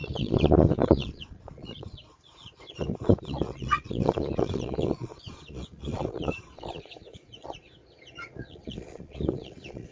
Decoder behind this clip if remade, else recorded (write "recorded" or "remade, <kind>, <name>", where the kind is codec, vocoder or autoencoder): remade, vocoder, Vocos